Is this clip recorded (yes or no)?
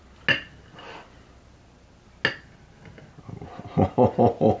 yes